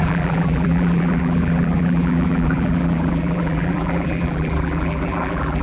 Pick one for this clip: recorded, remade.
remade